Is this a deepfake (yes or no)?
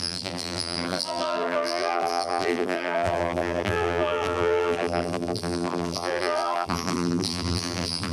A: yes